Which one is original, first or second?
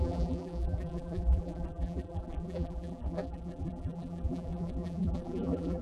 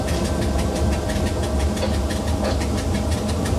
second